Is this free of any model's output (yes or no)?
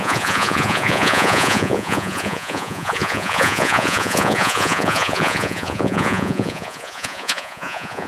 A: no